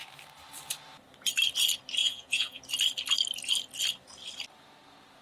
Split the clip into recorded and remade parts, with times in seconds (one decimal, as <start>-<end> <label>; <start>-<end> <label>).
0.0-2.0 recorded; 2.0-2.6 remade; 2.6-5.2 recorded